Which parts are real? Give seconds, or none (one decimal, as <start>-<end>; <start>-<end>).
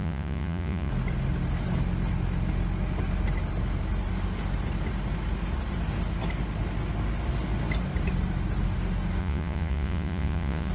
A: 0.9-9.2